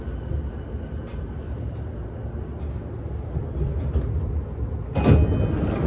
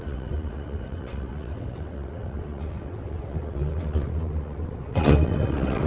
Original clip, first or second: first